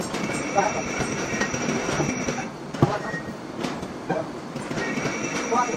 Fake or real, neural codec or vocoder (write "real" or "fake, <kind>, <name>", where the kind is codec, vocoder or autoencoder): fake, vocoder, BigVGAN v2